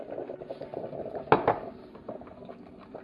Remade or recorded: recorded